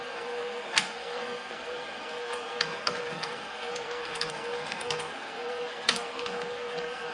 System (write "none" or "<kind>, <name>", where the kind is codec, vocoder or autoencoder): codec, SNAC